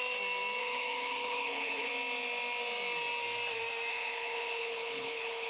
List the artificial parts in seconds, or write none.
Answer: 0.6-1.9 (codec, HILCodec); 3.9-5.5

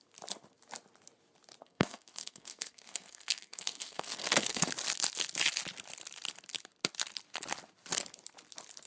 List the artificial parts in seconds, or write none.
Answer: 1.6-4.7 (codec, SNAC)

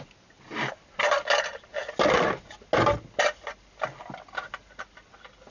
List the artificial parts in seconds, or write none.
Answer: none

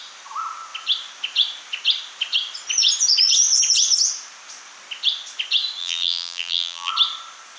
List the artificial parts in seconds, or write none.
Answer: 5.8-6.9 (vocoder, BigVGAN v2)